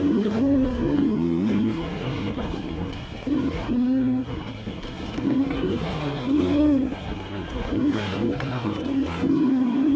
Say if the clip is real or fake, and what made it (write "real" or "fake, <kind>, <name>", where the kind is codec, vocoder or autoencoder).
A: fake, codec, SNAC